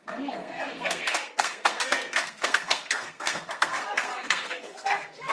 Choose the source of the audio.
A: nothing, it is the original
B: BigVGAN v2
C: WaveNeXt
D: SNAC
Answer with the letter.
D